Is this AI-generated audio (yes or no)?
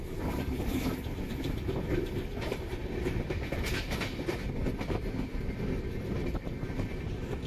no